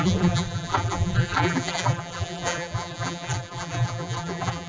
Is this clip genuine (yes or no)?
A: no